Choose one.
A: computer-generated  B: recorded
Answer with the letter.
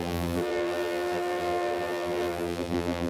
A